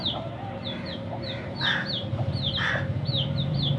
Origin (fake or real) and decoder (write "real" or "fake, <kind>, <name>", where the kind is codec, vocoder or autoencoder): fake, vocoder, BigVGAN v2